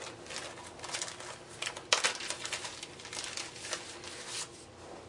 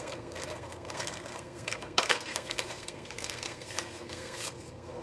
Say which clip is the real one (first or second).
first